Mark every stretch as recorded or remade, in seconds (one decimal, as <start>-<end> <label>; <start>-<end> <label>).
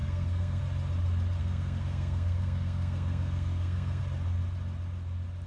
0.0-0.6 remade; 0.6-1.4 recorded; 1.4-4.0 remade; 4.0-5.5 recorded